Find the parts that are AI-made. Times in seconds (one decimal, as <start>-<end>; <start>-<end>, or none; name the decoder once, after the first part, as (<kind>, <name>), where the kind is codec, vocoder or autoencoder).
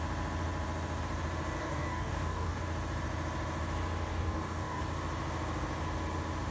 1.6-2.6 (codec, DAC); 4.1-4.8